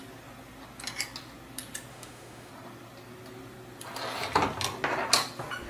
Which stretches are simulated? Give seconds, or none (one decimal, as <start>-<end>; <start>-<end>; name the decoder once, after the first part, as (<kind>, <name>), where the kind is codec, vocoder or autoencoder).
1.9-2.5 (autoencoder, DAC-VAE)